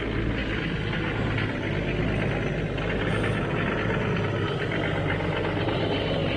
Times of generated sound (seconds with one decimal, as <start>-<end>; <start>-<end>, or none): none